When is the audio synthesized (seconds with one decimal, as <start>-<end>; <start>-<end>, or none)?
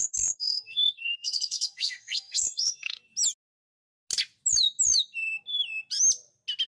0.0-3.0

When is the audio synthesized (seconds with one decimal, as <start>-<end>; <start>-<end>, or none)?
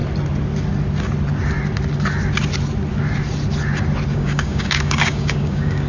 4.1-5.9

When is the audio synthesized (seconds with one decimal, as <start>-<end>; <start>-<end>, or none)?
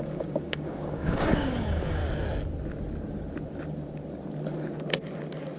0.0-2.0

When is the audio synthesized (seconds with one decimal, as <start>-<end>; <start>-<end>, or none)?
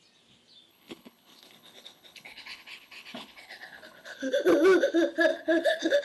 0.7-4.3; 5.3-6.0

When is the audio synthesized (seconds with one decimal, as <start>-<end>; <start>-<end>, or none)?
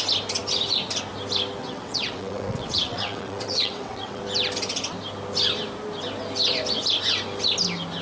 1.6-4.2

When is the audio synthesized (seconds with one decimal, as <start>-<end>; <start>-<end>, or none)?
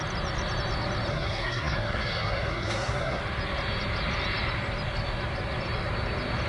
1.1-3.2